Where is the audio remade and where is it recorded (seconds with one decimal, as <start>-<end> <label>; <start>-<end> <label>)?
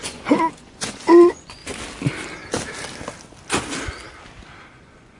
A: 0.0-1.6 remade; 1.6-4.7 recorded; 4.7-5.2 remade